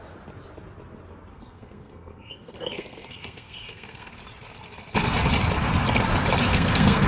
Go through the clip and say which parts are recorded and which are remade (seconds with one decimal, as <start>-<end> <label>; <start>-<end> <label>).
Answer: 0.0-1.3 recorded; 1.3-4.1 remade; 4.1-6.5 recorded; 6.5-7.1 remade